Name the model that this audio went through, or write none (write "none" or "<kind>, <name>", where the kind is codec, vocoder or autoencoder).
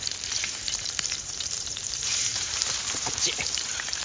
vocoder, BigVGAN v2